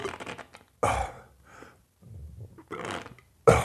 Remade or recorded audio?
recorded